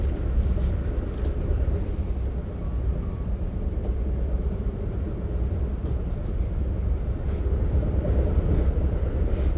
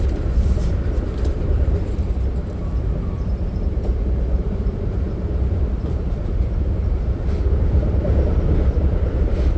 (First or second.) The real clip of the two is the first